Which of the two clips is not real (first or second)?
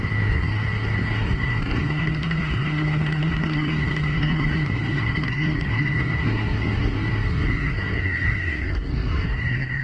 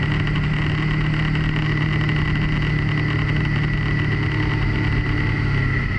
first